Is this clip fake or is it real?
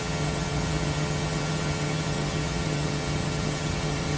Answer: fake